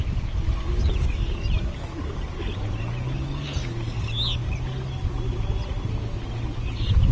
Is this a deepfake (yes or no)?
no